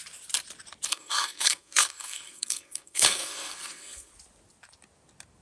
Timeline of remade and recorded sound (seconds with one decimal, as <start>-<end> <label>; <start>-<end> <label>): 0.0-0.9 recorded; 0.9-4.1 remade; 4.1-5.4 recorded